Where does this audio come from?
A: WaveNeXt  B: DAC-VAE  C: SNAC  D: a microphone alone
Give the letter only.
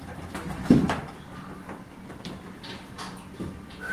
D